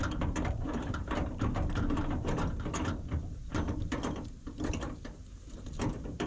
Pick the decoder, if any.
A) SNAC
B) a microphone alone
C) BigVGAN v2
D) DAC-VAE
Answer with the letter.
C